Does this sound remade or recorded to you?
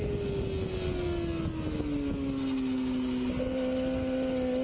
recorded